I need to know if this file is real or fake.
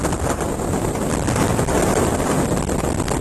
real